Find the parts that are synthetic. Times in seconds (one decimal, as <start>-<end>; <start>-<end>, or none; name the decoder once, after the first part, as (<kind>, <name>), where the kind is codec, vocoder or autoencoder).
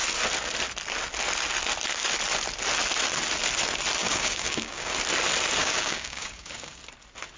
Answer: 4.0-4.9 (codec, DAC); 5.6-6.8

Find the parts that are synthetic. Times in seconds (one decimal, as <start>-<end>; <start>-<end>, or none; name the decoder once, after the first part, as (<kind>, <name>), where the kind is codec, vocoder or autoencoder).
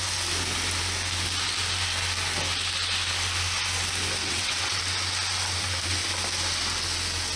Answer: 4.2-4.8 (vocoder, WaveNeXt)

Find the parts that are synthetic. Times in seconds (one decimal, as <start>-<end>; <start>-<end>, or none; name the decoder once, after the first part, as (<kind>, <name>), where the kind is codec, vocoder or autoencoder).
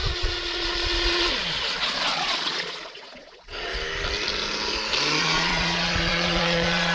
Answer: 0.0-3.7 (vocoder, Vocos); 5.2-6.9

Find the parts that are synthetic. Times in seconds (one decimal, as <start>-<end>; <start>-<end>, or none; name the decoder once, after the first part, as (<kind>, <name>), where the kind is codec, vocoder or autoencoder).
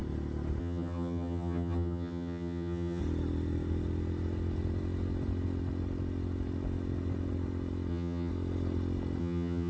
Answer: 0.6-3.0 (vocoder, HiFi-GAN); 7.9-8.3; 9.2-9.7